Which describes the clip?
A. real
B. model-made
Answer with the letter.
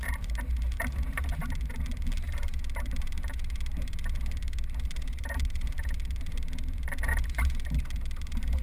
B